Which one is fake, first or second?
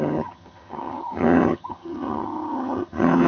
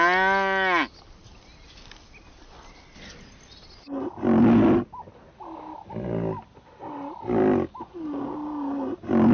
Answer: first